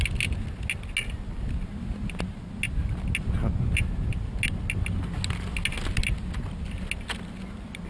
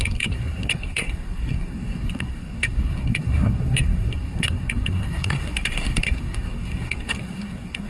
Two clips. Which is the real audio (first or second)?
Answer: first